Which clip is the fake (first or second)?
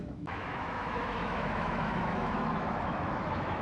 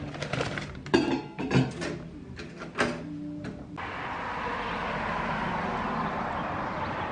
first